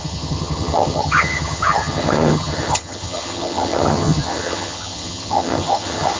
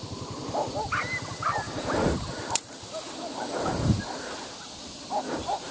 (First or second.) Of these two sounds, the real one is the second